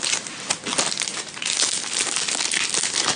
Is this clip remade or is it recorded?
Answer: recorded